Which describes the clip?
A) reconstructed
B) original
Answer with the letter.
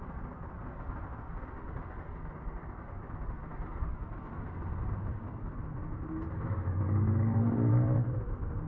B